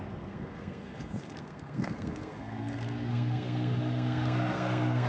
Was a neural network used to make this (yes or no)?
yes